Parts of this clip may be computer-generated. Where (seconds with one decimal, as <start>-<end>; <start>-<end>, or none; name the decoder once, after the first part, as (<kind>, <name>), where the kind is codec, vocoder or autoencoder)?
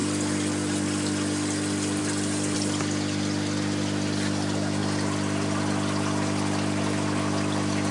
none